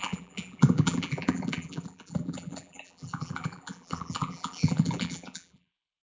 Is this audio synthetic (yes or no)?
yes